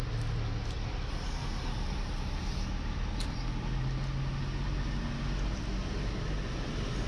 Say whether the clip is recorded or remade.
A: recorded